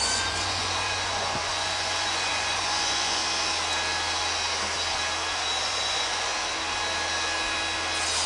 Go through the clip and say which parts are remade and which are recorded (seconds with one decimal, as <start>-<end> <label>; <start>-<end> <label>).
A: 0.0-3.2 remade; 3.2-5.6 recorded; 5.6-6.3 remade; 6.3-8.3 recorded